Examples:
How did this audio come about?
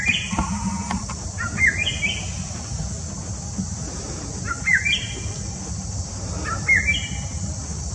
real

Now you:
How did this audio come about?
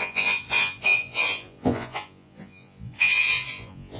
fake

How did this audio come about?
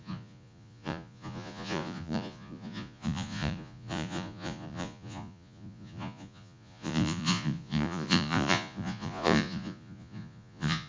fake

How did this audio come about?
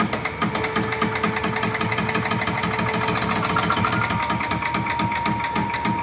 real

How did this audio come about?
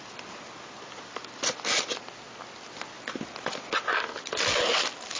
real